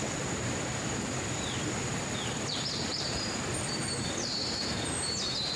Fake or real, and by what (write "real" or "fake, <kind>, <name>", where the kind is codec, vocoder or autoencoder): real